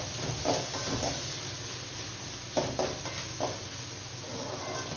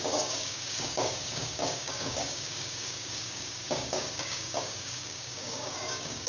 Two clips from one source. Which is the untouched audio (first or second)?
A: first